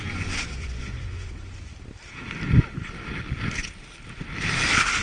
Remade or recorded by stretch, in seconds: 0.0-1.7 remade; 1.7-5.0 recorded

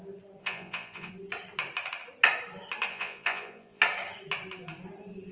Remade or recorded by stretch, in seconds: 0.0-0.4 recorded; 0.4-1.1 remade; 1.1-2.9 recorded; 2.9-3.8 remade; 3.8-5.3 recorded